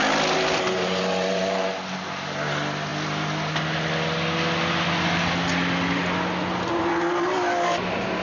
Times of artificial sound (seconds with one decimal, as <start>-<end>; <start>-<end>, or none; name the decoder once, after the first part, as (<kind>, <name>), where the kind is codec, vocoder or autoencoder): none

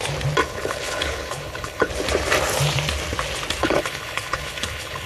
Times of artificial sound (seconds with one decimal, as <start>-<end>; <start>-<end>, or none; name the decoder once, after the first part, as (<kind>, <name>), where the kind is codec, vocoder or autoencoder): 0.4-1.9 (codec, HILCodec); 3.6-5.1

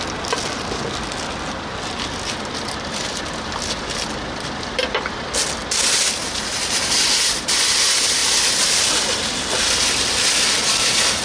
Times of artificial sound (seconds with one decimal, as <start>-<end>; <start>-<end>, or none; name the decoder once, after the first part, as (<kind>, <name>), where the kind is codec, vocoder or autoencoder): 8.2-9.3 (vocoder, BigVGAN v2)